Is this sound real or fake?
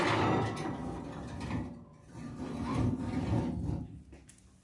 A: real